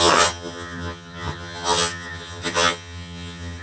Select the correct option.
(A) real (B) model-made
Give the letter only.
B